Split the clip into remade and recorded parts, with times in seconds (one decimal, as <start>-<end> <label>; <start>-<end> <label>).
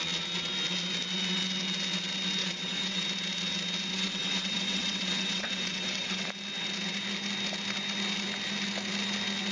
0.0-2.4 recorded; 2.4-3.0 remade; 3.0-3.9 recorded; 3.9-6.3 remade; 6.3-9.5 recorded